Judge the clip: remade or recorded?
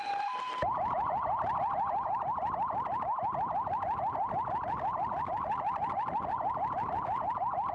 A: recorded